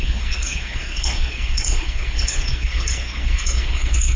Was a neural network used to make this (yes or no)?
yes